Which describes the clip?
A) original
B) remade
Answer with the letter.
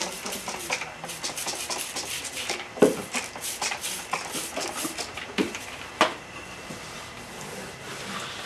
B